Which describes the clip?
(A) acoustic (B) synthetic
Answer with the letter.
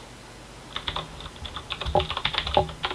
A